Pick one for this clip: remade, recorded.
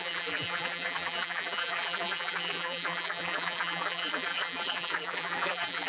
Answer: remade